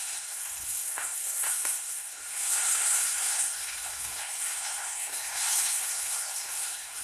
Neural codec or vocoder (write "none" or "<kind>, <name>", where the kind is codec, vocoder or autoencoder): codec, SNAC